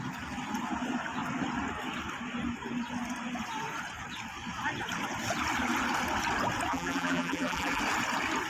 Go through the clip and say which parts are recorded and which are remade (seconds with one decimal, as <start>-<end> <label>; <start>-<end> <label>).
0.0-6.7 recorded; 6.7-7.8 remade; 7.8-8.5 recorded